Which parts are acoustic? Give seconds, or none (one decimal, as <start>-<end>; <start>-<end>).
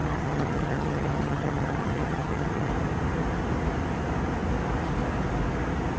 2.7-6.0